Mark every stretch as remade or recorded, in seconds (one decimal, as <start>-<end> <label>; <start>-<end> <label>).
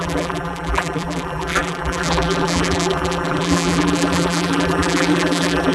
0.0-5.7 remade